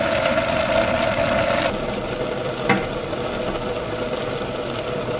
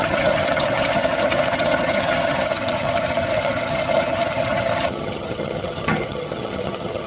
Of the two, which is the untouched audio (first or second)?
first